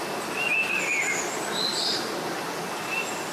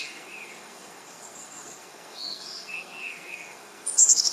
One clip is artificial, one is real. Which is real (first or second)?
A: first